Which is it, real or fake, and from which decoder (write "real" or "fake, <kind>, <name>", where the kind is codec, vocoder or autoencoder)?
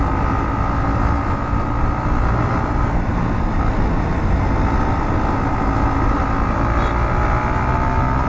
real